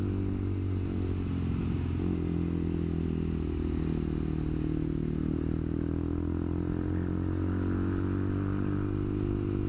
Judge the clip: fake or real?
real